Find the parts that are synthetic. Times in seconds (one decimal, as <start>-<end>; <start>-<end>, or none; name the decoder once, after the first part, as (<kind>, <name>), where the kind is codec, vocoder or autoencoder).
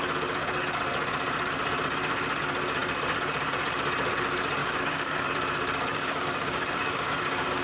4.6-5.3 (codec, DAC); 5.9-7.6